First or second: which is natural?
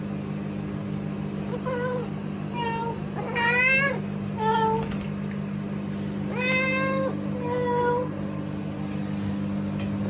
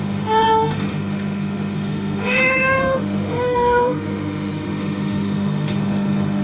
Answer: first